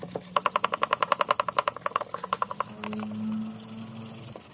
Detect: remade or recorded recorded